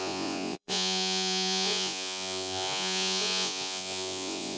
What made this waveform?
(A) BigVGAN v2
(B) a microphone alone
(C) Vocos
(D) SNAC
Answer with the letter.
C